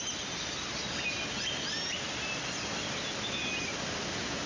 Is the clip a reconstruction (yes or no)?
no